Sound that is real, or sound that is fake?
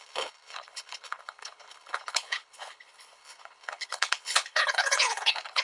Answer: fake